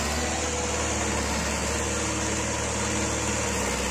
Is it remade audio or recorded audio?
recorded